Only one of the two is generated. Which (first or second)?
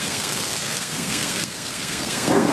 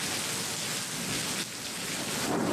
first